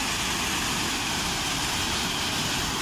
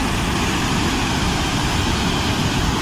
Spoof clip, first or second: second